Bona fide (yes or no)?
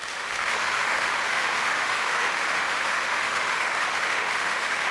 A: no